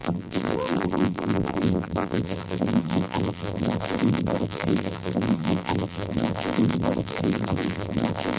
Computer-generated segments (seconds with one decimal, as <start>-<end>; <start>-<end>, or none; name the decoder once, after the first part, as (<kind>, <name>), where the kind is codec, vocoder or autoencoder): 0.0-8.4 (vocoder, BigVGAN v2)